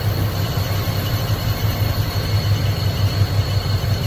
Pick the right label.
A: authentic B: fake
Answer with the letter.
A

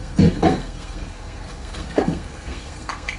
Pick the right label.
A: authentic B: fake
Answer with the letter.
B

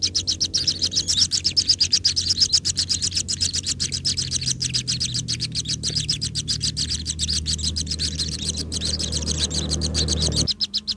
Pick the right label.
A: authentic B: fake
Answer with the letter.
A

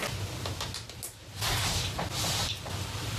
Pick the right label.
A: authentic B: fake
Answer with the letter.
A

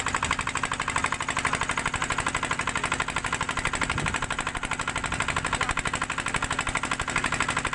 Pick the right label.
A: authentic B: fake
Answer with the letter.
A